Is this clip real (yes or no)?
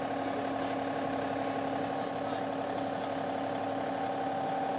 yes